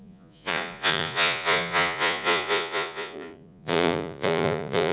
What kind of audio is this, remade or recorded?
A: remade